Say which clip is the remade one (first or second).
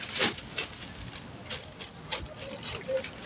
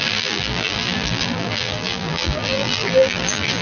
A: second